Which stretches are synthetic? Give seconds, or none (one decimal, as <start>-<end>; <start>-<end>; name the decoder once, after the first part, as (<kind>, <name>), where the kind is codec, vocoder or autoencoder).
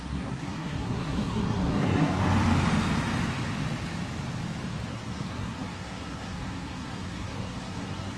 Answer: 0.0-2.2 (codec, SNAC); 4.9-8.2